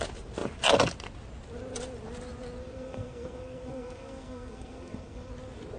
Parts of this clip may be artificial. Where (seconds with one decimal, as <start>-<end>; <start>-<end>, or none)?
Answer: 2.6-5.3